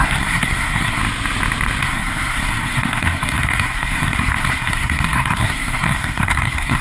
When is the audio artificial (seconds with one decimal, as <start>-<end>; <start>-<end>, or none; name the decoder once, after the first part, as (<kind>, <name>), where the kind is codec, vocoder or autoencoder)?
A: 0.0-1.0 (codec, SNAC); 1.8-6.8

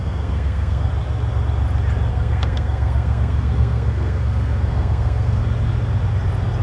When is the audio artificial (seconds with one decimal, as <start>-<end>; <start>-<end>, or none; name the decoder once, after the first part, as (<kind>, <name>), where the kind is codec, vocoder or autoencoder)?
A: 0.0-0.9 (codec, SNAC); 2.1-5.4

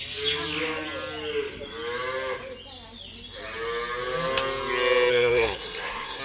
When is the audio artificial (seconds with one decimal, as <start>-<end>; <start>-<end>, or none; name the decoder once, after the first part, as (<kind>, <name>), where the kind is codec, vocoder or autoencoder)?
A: 5.1-6.2 (codec, SNAC)

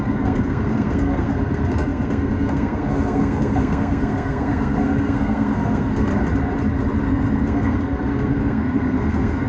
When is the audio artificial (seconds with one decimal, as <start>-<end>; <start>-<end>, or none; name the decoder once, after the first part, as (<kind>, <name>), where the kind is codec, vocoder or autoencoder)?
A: 0.0-6.1 (codec, SNAC); 7.0-9.5

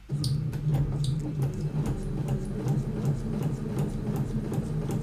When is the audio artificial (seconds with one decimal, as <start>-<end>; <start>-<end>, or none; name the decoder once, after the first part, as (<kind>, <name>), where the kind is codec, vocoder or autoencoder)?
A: none

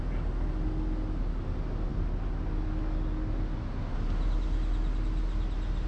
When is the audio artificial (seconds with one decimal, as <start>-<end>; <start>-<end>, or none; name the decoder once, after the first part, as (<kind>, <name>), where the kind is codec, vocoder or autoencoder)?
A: none

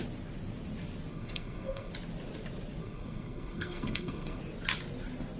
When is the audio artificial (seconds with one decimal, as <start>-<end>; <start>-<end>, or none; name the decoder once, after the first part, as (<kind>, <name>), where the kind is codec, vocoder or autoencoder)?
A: 1.1-1.9 (codec, SNAC); 2.8-4.4